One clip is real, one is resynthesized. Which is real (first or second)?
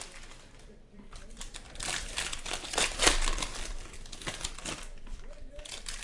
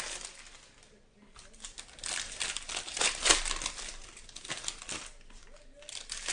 second